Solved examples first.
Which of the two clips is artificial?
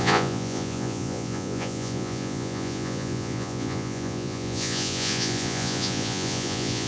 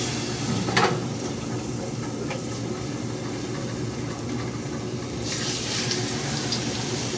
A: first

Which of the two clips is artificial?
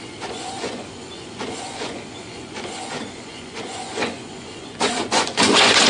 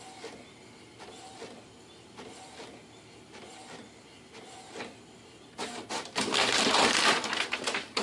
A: first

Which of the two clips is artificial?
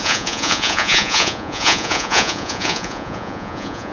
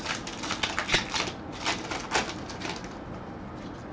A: first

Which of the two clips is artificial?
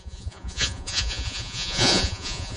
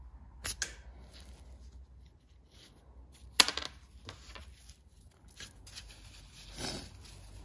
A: first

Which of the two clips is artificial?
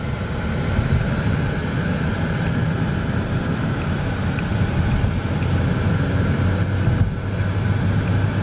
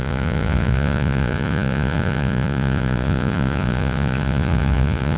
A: second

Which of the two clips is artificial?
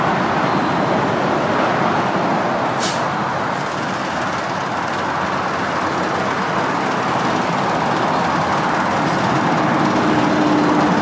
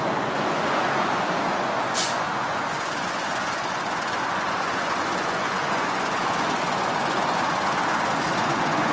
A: second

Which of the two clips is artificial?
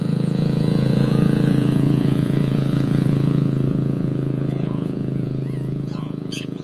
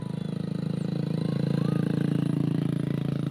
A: first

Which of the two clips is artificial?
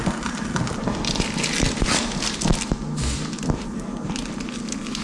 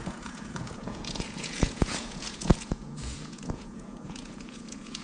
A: second